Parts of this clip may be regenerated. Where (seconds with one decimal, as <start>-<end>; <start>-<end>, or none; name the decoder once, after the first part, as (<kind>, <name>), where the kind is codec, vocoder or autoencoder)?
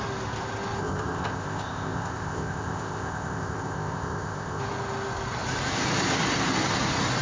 0.8-4.6 (codec, ZipCodec)